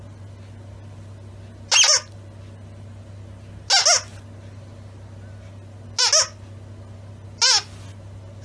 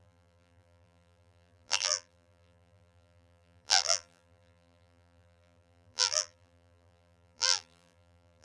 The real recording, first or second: first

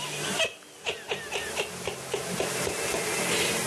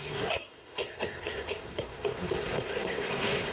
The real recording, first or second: first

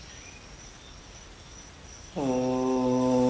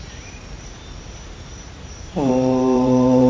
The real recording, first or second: first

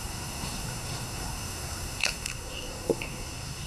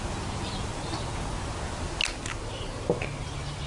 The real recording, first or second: second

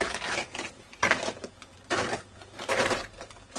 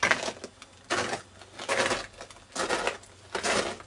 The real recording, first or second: second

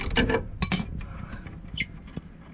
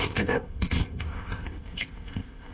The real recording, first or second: first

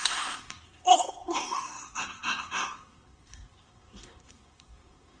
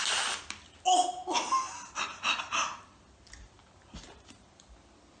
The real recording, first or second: second